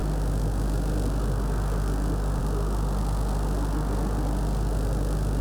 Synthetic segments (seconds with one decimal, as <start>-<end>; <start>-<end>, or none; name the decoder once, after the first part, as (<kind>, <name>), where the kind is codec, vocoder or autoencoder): none